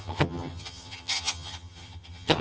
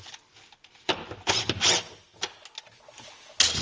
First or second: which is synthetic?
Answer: first